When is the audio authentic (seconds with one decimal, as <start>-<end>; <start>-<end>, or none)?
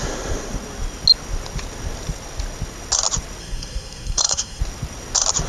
0.0-3.4; 4.6-5.5